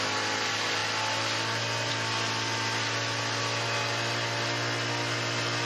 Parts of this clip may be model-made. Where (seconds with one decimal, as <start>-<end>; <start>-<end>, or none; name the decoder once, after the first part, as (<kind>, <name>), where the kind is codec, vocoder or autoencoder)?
none